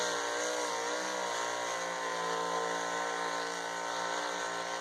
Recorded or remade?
recorded